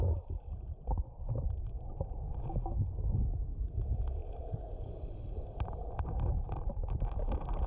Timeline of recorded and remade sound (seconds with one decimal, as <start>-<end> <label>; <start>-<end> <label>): 0.0-4.2 recorded; 4.2-4.9 remade; 4.9-7.7 recorded